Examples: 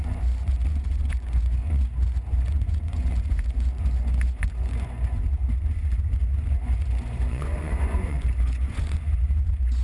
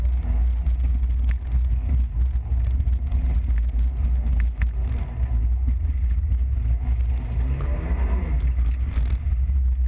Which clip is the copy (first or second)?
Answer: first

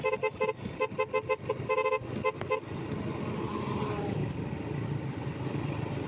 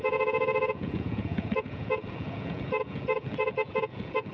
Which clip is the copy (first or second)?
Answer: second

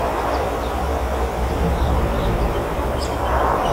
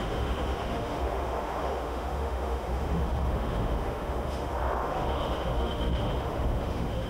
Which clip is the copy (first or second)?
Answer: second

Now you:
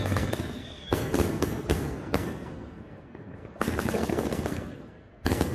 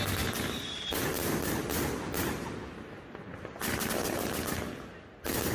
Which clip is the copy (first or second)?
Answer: first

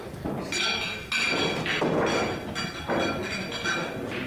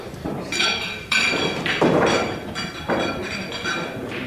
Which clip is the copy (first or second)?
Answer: second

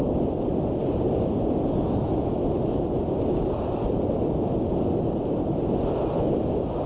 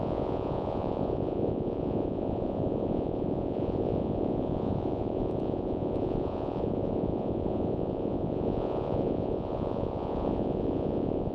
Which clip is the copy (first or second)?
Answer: second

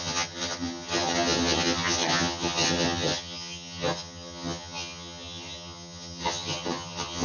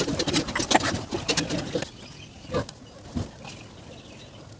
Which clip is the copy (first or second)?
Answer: first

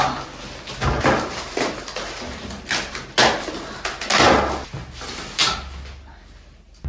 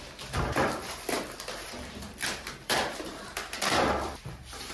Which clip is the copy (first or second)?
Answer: second